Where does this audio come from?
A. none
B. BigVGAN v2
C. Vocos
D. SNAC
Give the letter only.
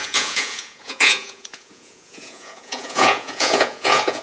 C